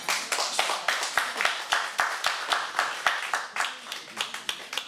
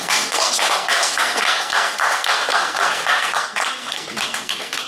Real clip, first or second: first